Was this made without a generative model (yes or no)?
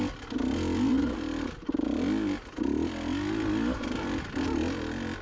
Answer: yes